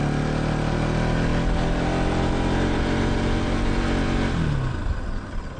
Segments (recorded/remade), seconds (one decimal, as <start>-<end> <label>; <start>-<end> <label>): 0.0-5.6 recorded